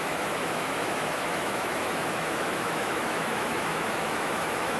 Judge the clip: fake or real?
fake